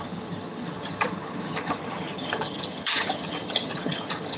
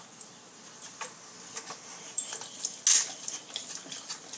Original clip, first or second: second